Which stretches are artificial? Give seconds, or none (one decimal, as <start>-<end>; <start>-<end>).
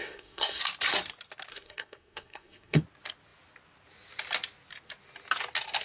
0.0-0.6; 1.5-2.8